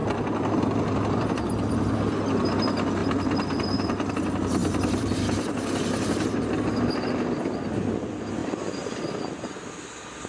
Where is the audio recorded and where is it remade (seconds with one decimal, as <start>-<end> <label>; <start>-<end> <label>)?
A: 0.0-1.7 remade; 1.7-3.0 recorded; 3.0-4.1 remade; 4.1-4.6 recorded; 4.6-5.2 remade; 5.2-8.4 recorded; 8.4-9.2 remade; 9.2-10.3 recorded